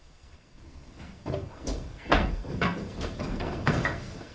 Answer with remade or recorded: remade